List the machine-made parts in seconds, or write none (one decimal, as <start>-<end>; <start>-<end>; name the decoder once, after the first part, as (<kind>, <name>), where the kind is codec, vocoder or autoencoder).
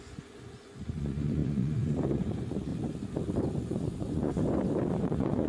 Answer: 0.0-2.7 (vocoder, Vocos); 3.6-4.4; 4.9-5.5